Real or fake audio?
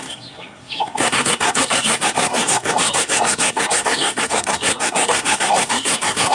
fake